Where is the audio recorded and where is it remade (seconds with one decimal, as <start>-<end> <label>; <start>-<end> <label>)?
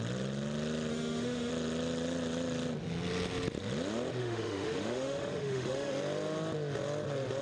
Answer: 0.0-0.9 recorded; 0.9-1.5 remade; 1.5-4.2 recorded; 4.2-5.9 remade; 5.9-7.4 recorded